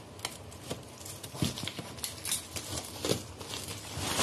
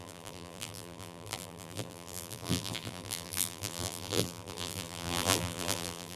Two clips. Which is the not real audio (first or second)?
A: second